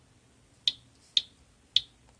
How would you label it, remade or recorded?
recorded